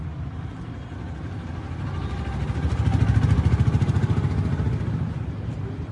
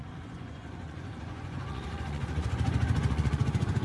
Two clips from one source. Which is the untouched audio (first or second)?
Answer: first